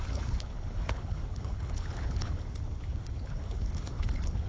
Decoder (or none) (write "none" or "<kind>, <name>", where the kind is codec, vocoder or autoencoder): codec, HILCodec